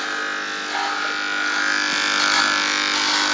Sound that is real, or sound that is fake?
real